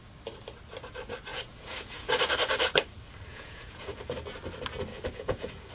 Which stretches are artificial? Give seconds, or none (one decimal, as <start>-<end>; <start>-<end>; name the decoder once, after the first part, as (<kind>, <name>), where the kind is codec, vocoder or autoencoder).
1.3-2.1 (vocoder, Vocos); 3.3-4.0; 4.9-5.7